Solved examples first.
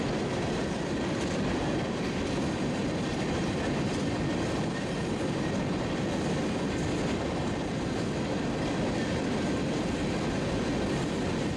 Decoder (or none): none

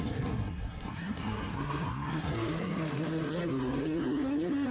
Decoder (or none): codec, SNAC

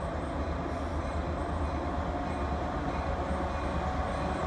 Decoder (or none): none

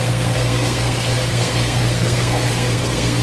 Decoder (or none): codec, SNAC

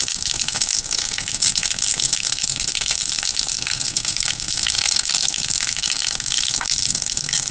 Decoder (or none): codec, SNAC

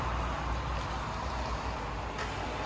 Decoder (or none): none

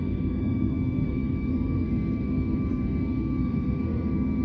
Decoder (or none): codec, SNAC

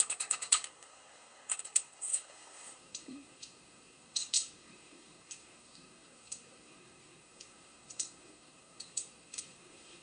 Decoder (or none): codec, SNAC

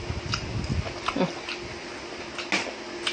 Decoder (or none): none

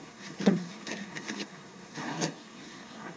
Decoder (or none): codec, SNAC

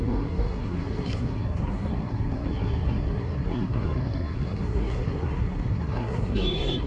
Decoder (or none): codec, SNAC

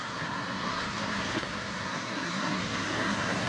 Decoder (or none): codec, SNAC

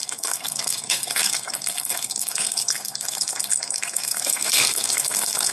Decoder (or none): codec, SNAC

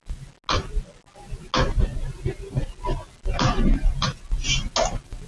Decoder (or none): none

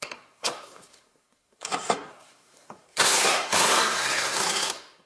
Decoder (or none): codec, SNAC